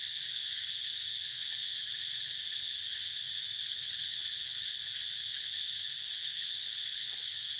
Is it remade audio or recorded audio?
remade